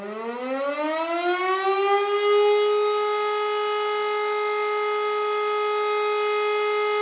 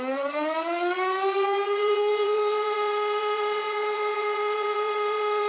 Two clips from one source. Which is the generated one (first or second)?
second